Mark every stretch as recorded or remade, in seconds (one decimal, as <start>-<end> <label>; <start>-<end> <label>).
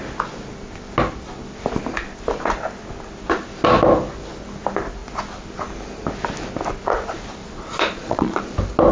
0.0-7.4 recorded; 7.4-8.4 remade; 8.4-8.9 recorded